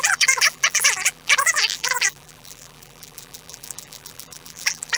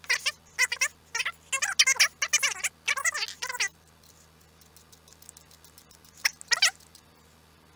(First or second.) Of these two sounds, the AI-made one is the first